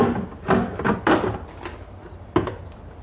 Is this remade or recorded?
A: recorded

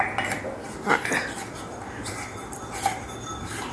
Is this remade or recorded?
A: recorded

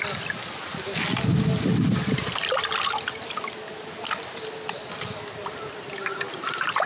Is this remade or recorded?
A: recorded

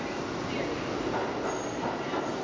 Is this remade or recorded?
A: recorded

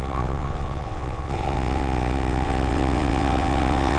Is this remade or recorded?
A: remade